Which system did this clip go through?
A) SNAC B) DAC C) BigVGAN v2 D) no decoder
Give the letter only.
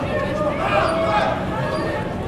C